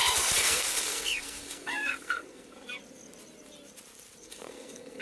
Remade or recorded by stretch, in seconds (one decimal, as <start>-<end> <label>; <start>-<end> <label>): 0.0-2.8 remade; 2.8-4.2 recorded; 4.2-5.0 remade